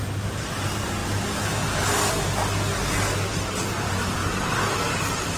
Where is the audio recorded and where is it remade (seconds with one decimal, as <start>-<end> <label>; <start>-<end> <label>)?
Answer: 0.0-4.2 recorded; 4.2-4.7 remade; 4.7-5.4 recorded